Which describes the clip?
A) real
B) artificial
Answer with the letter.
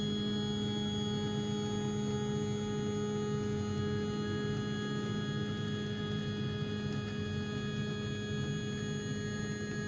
A